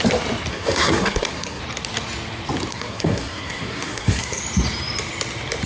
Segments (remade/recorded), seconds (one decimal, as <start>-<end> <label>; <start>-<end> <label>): 0.0-0.5 recorded; 0.5-1.6 remade; 1.6-2.7 recorded; 2.7-4.4 remade; 4.4-5.7 recorded